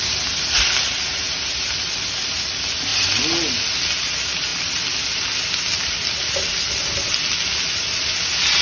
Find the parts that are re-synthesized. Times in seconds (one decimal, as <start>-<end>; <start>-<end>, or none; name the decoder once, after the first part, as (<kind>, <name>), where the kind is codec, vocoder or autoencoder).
none